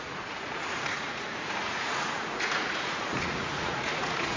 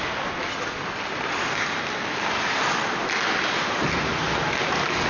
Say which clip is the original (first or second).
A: second